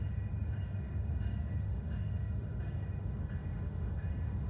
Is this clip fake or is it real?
fake